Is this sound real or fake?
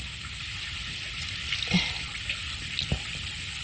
real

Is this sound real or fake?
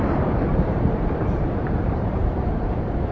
fake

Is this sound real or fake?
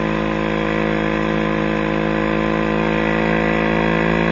real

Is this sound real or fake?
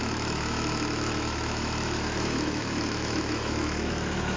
fake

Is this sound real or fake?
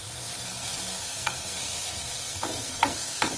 fake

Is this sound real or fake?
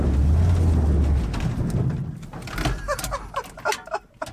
real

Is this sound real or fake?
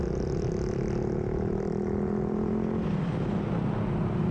real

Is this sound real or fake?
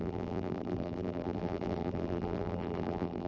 fake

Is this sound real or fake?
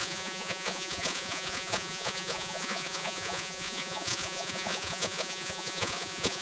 fake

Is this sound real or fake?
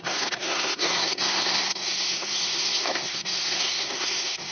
fake